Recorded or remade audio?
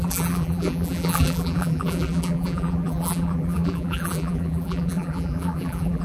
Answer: remade